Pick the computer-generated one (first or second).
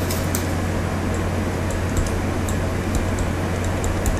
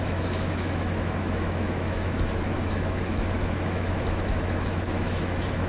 second